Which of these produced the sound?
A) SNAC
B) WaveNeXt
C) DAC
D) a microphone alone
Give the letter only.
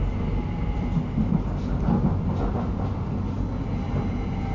D